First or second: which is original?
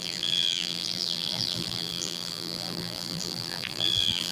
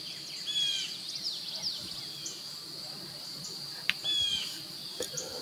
second